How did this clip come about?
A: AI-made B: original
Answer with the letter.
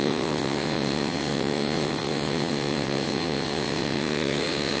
A